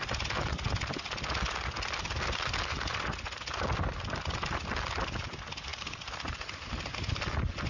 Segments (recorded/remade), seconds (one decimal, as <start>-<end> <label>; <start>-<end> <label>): 0.0-7.7 recorded